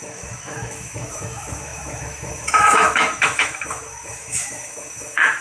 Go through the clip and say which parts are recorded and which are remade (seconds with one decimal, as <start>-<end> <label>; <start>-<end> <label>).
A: 0.0-5.4 remade